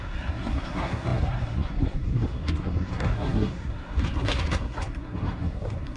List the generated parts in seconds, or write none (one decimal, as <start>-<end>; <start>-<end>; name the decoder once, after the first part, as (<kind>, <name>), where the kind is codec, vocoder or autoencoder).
0.0-6.0 (codec, SNAC)